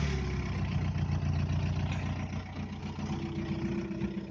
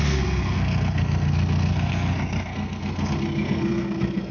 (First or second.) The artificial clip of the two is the second